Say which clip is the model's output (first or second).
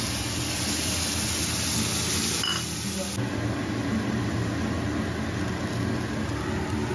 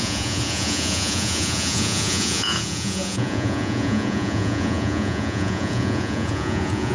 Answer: second